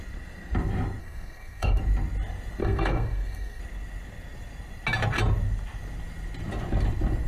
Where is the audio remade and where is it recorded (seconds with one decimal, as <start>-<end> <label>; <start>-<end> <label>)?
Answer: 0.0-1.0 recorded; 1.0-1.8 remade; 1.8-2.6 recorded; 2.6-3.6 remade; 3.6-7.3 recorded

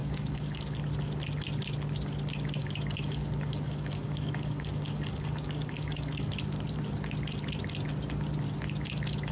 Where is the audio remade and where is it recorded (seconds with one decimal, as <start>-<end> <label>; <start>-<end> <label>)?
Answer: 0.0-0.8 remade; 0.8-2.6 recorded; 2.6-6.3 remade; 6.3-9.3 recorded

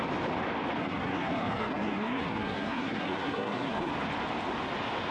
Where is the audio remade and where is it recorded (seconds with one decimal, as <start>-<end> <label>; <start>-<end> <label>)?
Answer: 0.0-0.8 recorded; 0.8-3.9 remade; 3.9-5.1 recorded

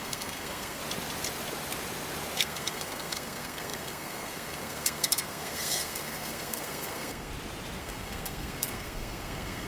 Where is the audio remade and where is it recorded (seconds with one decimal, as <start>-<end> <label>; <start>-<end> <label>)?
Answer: 0.0-0.8 remade; 0.8-2.4 recorded; 2.4-7.3 remade; 7.3-7.8 recorded; 7.8-9.7 remade

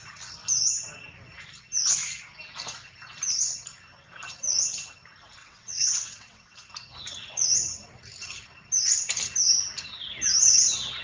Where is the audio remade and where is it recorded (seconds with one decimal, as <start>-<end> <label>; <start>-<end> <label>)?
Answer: 0.0-5.4 recorded; 5.4-6.7 remade; 6.7-11.0 recorded

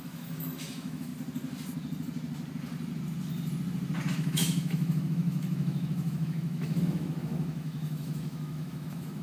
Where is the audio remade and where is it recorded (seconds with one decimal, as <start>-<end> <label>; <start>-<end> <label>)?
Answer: 0.0-1.1 remade; 1.1-4.1 recorded; 4.1-9.2 remade

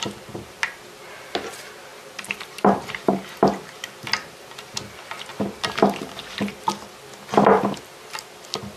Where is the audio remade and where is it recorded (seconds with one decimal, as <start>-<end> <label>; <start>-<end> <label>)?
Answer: 0.0-1.9 recorded; 1.9-3.2 remade; 3.2-8.8 recorded